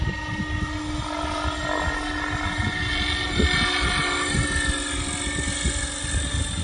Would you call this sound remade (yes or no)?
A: no